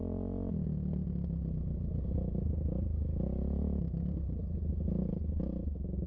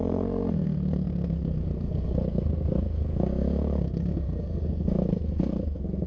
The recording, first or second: first